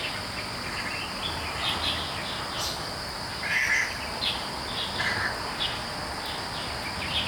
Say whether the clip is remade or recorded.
recorded